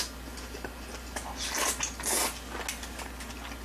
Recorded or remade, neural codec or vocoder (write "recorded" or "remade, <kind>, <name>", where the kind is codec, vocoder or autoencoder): recorded